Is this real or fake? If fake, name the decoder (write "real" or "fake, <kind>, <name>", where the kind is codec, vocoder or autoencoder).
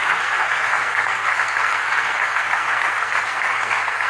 fake, codec, SNAC